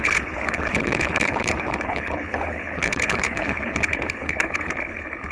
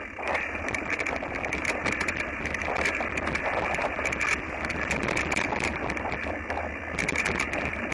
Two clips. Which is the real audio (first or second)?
second